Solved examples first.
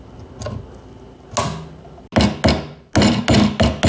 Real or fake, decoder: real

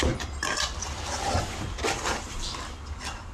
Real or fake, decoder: real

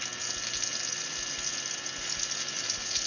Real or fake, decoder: real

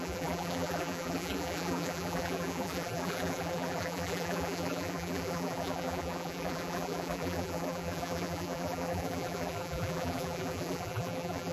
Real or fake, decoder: fake, vocoder, BigVGAN v2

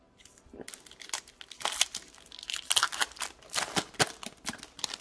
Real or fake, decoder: real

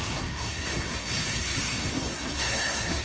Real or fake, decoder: fake, codec, SNAC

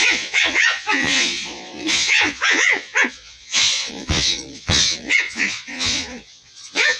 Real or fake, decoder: fake, vocoder, Vocos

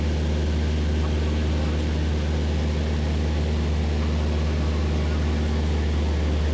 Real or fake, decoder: real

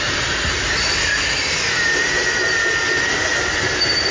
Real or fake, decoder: real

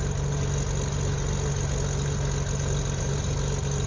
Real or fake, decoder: real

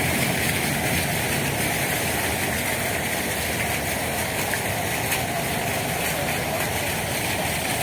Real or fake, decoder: real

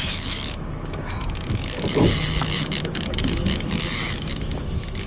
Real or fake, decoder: fake, autoencoder, DAC-VAE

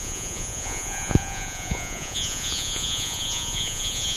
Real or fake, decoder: fake, vocoder, Vocos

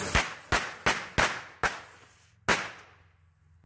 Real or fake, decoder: real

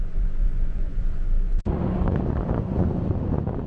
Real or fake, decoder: fake, vocoder, Vocos